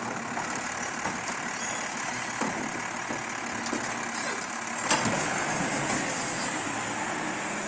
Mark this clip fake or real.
real